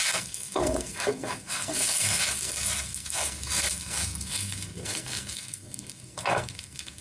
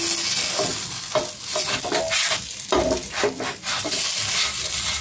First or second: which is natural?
second